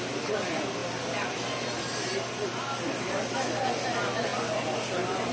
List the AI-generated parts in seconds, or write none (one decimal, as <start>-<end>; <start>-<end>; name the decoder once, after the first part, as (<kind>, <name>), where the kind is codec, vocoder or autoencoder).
none